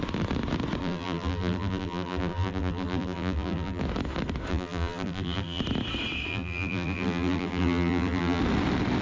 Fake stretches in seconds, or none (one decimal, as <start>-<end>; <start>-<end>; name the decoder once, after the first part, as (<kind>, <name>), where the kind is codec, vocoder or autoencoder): 0.8-3.8 (vocoder, BigVGAN v2); 4.5-5.6; 6.3-8.4